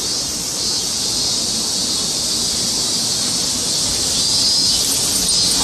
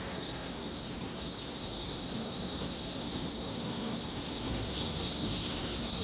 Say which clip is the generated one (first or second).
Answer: second